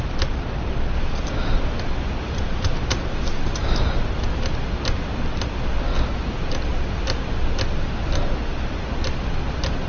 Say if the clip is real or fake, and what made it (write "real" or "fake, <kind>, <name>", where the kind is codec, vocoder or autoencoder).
real